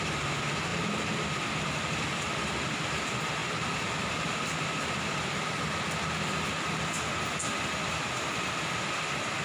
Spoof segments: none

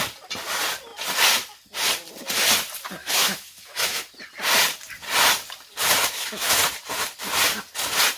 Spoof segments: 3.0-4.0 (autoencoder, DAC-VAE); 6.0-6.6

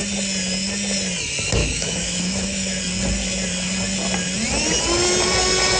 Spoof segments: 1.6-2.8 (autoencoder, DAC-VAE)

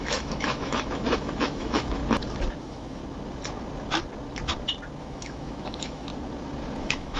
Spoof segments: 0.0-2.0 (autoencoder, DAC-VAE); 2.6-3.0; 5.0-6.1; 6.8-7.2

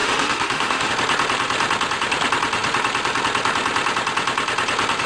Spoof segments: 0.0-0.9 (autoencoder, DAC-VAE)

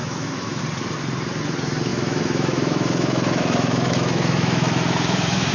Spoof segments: 0.0-0.6 (autoencoder, DAC-VAE); 1.9-5.5

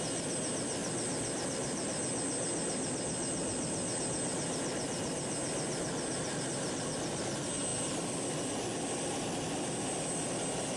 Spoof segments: none